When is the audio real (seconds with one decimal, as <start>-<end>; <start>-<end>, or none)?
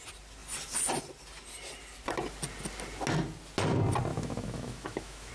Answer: 0.0-4.1